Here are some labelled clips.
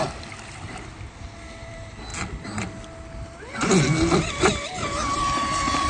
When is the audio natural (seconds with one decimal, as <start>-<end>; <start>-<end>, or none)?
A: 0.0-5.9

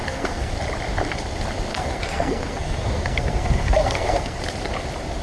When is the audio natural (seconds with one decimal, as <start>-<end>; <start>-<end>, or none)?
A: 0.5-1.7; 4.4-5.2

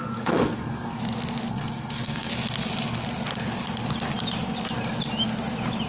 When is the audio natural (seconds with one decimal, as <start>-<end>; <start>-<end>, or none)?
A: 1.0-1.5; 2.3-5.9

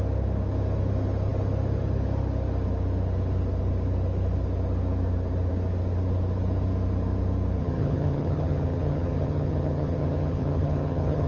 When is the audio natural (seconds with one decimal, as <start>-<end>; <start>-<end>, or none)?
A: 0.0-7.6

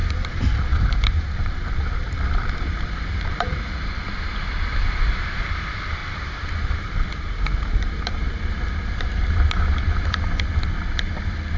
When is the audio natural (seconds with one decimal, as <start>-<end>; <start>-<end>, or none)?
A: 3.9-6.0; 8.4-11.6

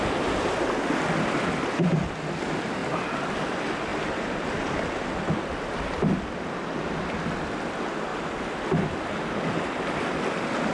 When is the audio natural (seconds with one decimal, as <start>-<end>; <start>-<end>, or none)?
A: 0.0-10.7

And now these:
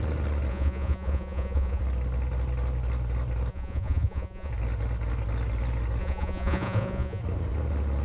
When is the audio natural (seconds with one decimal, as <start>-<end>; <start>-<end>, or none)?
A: 0.0-0.5; 1.8-3.5; 4.5-6.0; 7.2-8.0

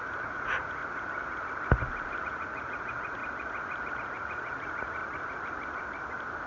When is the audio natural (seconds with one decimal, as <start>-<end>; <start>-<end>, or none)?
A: 0.8-2.2; 3.2-3.9; 5.0-6.5